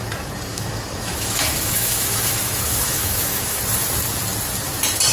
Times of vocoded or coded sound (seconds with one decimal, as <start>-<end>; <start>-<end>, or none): 0.5-3.6